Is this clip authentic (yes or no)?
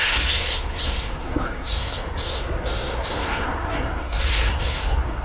no